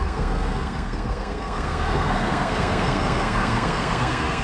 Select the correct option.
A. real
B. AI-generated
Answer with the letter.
B